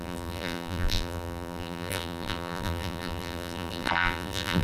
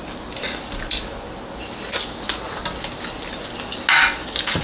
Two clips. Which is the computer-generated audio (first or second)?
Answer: first